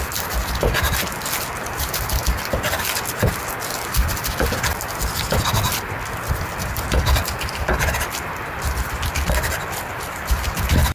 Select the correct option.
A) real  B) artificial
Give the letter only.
A